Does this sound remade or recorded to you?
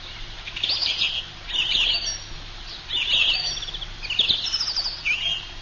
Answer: recorded